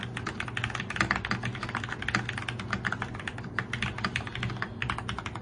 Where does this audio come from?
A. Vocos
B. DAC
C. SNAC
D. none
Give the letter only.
D